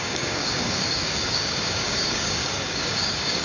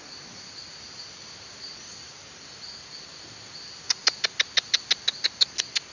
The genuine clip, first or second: second